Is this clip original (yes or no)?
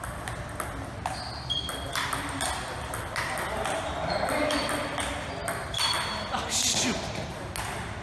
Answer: yes